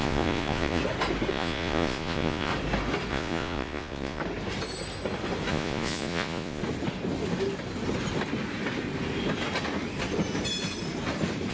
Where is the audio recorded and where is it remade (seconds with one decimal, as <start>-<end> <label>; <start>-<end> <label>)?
0.0-0.8 remade; 0.8-1.3 recorded; 1.3-2.5 remade; 2.5-3.1 recorded; 3.1-4.2 remade; 4.2-5.5 recorded; 5.5-6.6 remade; 6.6-11.5 recorded